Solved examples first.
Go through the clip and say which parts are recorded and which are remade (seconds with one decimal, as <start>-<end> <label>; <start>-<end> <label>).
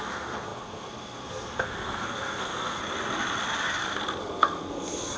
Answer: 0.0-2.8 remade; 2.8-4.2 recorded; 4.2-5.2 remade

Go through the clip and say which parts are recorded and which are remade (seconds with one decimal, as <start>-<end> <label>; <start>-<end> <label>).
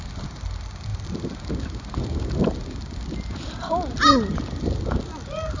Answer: 0.0-5.6 recorded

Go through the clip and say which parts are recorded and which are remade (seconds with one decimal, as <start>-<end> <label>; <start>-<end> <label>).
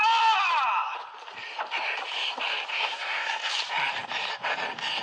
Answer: 0.0-2.7 recorded; 2.7-3.5 remade; 3.5-5.0 recorded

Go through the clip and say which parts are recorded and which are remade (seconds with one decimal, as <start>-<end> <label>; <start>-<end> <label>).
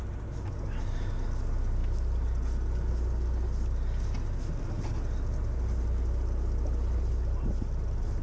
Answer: 0.0-8.2 recorded